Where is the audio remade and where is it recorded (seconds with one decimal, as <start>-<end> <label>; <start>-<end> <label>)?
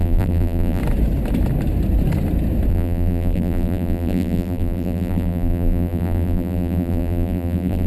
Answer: 0.0-0.8 remade; 0.8-2.7 recorded; 2.7-7.9 remade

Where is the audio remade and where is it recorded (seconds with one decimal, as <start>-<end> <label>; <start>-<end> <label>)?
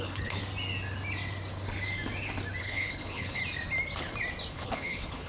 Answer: 0.0-0.4 remade; 0.4-2.6 recorded; 2.6-3.4 remade; 3.4-4.5 recorded; 4.5-5.3 remade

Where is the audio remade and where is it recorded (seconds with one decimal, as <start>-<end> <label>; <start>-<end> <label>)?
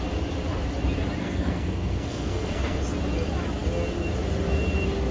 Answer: 0.0-1.2 recorded; 1.2-2.8 remade; 2.8-5.1 recorded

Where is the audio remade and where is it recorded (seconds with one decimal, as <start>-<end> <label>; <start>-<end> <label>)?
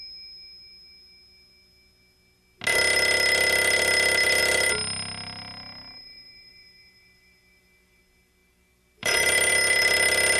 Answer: 0.0-4.4 recorded; 4.4-8.0 remade; 8.0-8.4 recorded; 8.4-9.5 remade; 9.5-10.4 recorded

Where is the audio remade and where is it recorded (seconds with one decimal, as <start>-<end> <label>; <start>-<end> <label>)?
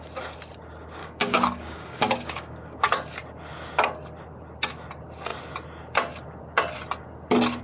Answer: 0.0-1.0 recorded; 1.0-2.9 remade; 2.9-7.6 recorded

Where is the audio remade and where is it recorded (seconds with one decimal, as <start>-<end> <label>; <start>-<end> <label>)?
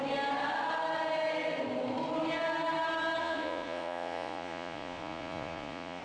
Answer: 0.0-3.2 recorded; 3.2-6.0 remade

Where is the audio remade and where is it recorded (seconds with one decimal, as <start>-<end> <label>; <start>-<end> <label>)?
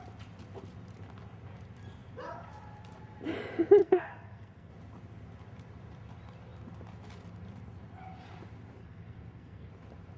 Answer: 0.0-3.8 recorded; 3.8-4.7 remade; 4.7-8.8 recorded; 8.8-9.7 remade; 9.7-10.2 recorded